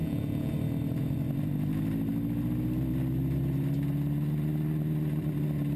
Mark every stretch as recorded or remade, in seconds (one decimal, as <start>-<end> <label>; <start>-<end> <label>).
0.0-0.5 remade; 0.5-5.8 recorded